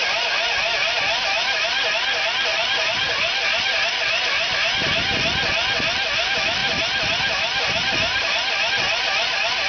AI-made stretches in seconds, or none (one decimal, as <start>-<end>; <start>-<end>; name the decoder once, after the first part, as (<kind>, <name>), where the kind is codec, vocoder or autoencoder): 2.5-4.7 (vocoder, BigVGAN v2); 6.6-8.7